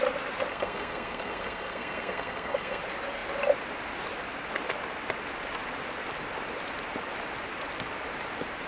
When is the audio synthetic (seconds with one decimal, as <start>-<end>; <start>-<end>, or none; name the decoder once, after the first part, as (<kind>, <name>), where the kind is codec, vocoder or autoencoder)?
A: 0.5-2.8 (codec, SNAC)